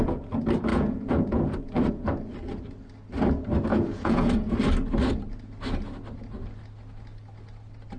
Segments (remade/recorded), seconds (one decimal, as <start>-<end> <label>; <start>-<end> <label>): 0.0-0.7 recorded; 0.7-1.9 remade; 1.9-3.7 recorded; 3.7-4.5 remade; 4.5-8.0 recorded

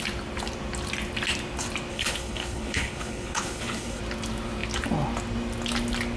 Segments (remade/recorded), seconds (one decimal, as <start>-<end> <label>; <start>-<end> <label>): 0.0-1.9 recorded; 1.9-4.0 remade; 4.0-6.2 recorded

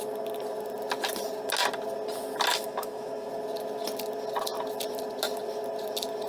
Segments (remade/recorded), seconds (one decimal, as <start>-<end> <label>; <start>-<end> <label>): 0.0-2.5 recorded; 2.5-3.3 remade; 3.3-6.3 recorded

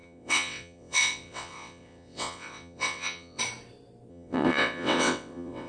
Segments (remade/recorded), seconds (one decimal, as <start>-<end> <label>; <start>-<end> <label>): 0.0-3.4 remade; 3.4-4.1 recorded; 4.1-5.7 remade

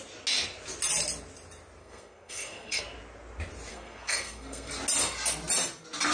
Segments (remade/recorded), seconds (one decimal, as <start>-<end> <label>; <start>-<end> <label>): 0.0-1.8 recorded; 1.8-2.8 remade; 2.8-3.7 recorded; 3.7-4.7 remade; 4.7-6.1 recorded

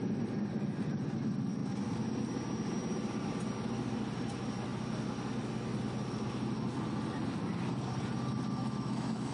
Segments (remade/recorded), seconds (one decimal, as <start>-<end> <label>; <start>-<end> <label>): 0.0-8.6 recorded; 8.6-9.3 remade